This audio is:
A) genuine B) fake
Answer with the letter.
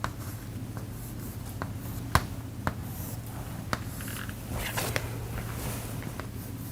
A